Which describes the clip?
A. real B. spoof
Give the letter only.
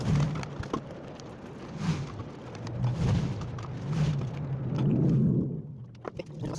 A